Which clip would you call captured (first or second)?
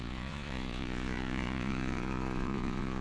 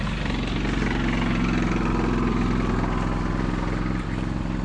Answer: second